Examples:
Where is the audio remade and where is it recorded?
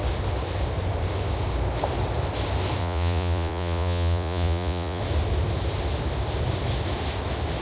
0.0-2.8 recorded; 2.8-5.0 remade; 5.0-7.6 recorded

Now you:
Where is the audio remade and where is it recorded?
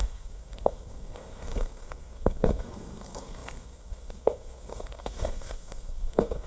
0.0-6.5 remade